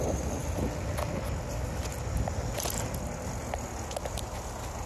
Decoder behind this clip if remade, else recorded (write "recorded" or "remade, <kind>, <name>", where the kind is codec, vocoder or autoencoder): recorded